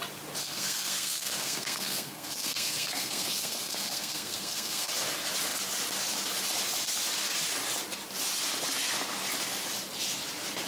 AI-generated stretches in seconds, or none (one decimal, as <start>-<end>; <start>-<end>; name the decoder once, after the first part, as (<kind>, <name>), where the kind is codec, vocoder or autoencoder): 0.4-4.9 (codec, SNAC)